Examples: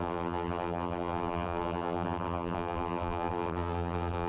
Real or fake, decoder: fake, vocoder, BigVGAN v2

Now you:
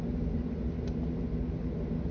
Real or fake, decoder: real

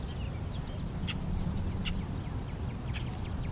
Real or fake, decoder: fake, vocoder, BigVGAN v2